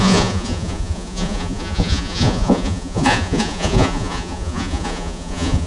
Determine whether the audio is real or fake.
fake